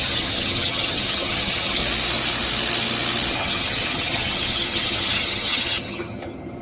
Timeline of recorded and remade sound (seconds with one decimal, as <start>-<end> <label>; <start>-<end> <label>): 0.0-1.8 remade; 1.8-3.3 recorded; 3.3-6.6 remade